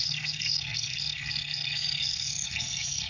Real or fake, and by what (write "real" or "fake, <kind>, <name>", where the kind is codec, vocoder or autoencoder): fake, codec, SNAC